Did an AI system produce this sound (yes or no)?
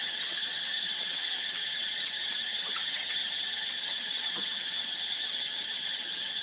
yes